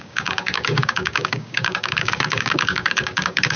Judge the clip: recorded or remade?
remade